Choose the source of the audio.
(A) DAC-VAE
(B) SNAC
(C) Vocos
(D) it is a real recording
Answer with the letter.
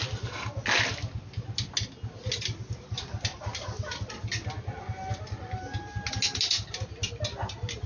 D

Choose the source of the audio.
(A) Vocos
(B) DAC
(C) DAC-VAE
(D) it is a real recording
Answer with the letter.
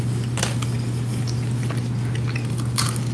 D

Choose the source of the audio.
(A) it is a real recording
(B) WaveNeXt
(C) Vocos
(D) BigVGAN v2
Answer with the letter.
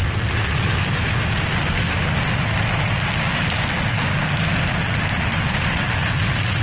A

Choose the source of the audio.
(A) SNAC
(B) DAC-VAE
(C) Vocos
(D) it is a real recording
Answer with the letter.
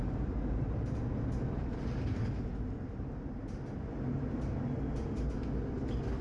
D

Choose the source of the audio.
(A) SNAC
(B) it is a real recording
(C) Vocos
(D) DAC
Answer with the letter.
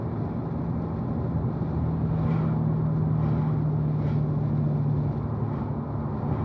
B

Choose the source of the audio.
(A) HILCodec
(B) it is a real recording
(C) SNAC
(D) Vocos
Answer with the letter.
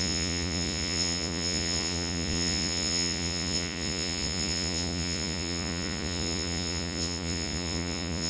D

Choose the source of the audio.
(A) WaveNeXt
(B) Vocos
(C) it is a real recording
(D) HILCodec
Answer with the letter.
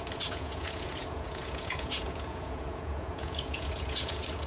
B